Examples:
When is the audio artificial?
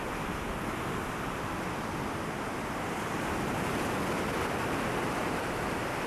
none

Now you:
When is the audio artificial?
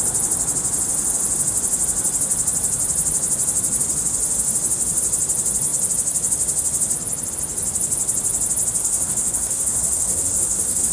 8.8-10.9 (codec, SNAC)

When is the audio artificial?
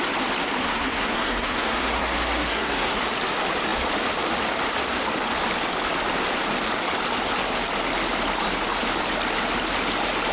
0.6-3.0 (codec, SNAC)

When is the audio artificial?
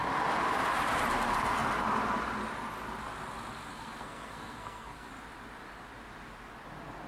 3.7-5.1 (codec, SNAC)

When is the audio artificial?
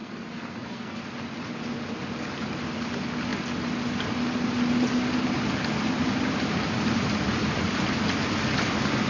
0.0-1.0 (codec, SNAC)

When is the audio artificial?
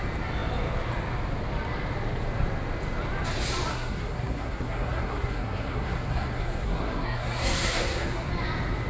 3.7-8.3 (codec, SNAC)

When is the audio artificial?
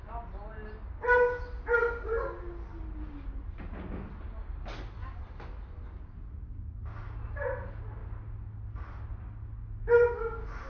none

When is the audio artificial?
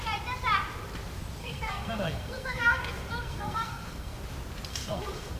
1.4-4.2 (codec, SNAC); 4.7-5.4